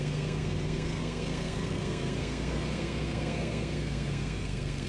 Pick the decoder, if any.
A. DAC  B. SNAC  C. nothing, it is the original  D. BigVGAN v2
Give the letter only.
B